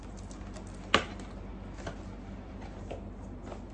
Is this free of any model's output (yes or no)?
yes